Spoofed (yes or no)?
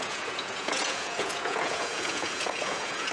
yes